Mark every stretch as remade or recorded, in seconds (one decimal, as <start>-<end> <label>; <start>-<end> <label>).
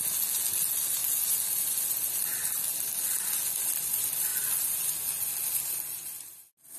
0.0-6.8 recorded